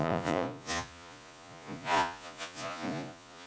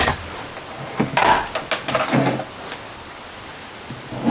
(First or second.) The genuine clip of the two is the second